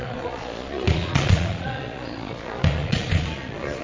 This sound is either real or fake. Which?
fake